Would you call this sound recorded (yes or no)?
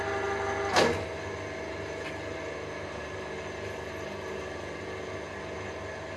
yes